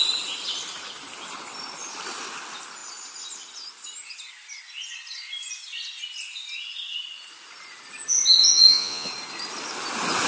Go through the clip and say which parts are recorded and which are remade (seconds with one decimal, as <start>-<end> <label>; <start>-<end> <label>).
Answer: 0.0-8.4 recorded; 8.4-9.1 remade; 9.1-10.3 recorded